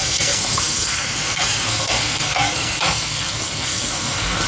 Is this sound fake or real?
fake